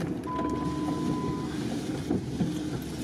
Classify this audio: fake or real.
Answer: real